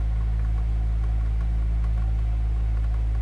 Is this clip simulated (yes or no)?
no